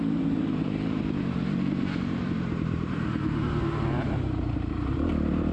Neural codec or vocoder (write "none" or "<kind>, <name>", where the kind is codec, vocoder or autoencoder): vocoder, BigVGAN v2